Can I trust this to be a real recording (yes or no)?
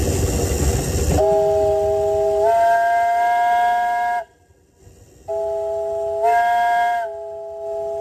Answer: yes